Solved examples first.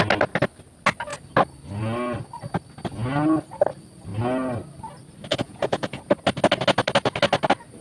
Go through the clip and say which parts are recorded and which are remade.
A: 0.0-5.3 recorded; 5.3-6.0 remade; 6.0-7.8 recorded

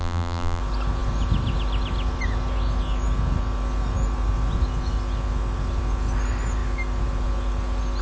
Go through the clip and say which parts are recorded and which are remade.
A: 0.0-0.6 remade; 0.6-8.0 recorded

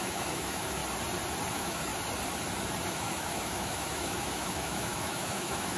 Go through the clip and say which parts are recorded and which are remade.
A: 0.0-0.8 remade; 0.8-1.5 recorded; 1.5-1.9 remade; 1.9-2.9 recorded; 2.9-5.8 remade

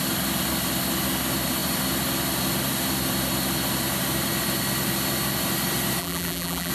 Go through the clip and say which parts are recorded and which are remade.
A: 0.0-6.0 recorded; 6.0-6.7 remade

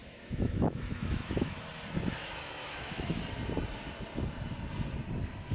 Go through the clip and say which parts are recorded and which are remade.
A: 0.0-1.6 remade; 1.6-2.2 recorded; 2.2-3.2 remade; 3.2-5.5 recorded

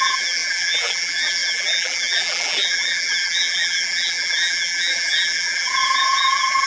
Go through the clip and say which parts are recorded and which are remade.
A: 0.0-6.7 remade

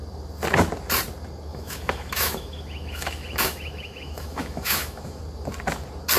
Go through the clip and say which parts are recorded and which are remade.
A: 0.0-1.5 recorded; 1.5-5.2 remade; 5.2-6.2 recorded